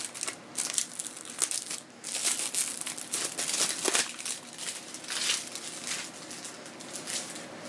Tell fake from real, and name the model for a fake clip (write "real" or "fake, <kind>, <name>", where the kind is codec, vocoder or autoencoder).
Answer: real